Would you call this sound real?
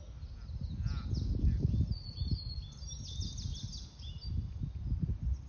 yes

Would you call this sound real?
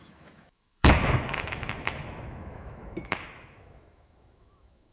no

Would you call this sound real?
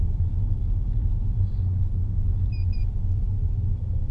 yes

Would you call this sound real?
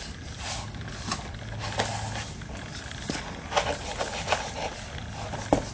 yes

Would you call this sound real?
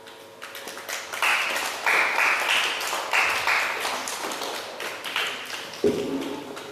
yes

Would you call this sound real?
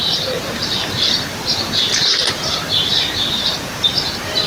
no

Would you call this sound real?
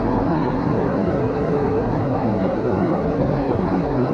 no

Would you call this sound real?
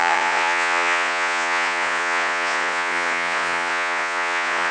no